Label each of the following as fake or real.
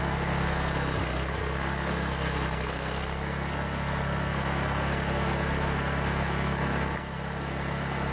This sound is fake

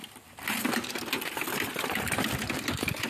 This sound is real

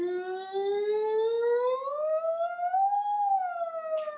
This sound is real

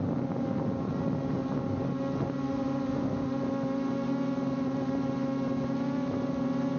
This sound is real